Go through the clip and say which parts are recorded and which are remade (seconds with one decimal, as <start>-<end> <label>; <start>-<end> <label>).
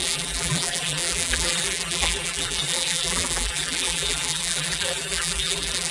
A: 0.0-5.9 remade